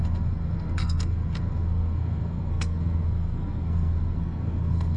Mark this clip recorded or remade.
remade